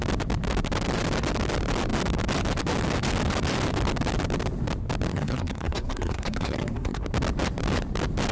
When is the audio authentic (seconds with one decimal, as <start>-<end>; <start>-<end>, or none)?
0.0-5.1; 7.0-8.3